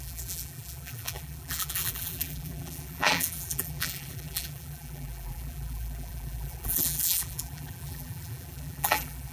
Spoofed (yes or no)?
yes